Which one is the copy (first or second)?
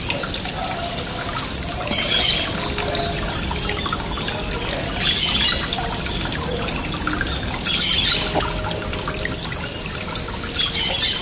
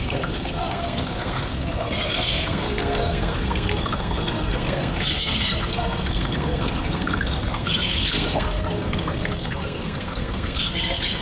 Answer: second